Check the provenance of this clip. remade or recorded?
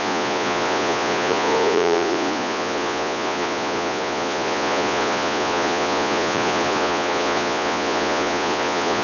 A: remade